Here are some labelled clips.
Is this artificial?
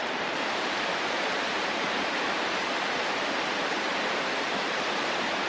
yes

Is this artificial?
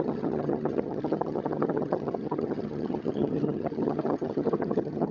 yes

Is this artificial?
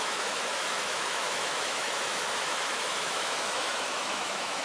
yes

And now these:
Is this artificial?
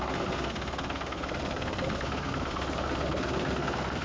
yes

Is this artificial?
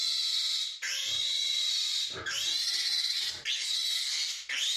no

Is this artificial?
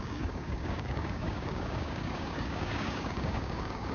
yes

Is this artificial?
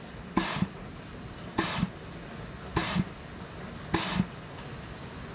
no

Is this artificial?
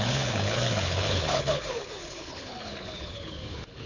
yes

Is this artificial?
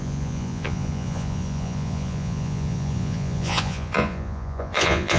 yes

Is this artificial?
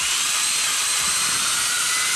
yes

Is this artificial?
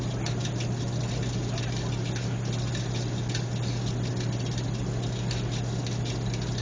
no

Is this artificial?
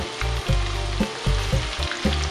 no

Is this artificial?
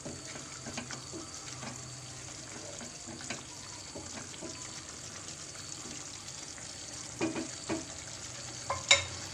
no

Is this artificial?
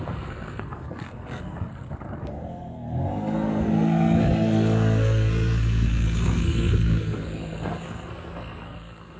yes